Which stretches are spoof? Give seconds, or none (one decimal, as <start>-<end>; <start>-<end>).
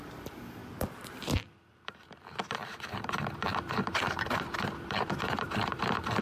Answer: 0.0-0.6; 1.1-6.2